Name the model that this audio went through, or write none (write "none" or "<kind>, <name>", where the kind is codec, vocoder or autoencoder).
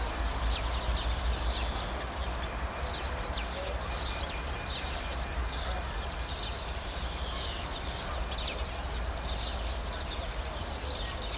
none